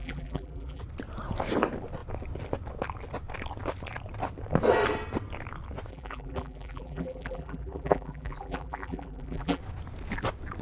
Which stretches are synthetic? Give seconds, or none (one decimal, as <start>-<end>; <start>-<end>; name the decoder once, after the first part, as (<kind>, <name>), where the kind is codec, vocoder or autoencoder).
0.0-0.8 (vocoder, BigVGAN v2); 5.9-9.6